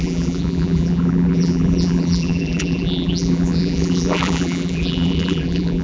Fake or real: fake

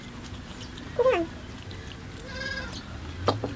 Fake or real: real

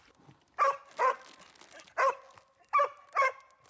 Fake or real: real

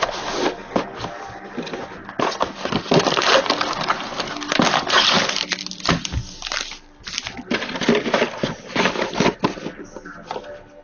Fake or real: real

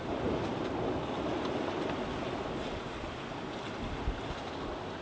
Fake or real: real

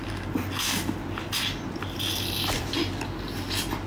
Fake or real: real